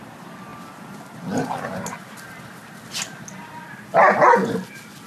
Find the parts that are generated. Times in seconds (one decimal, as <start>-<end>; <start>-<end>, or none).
none